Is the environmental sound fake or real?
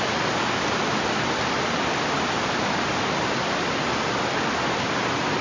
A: real